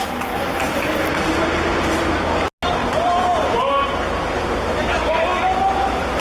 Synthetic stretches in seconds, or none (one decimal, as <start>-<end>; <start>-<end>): 2.8-3.6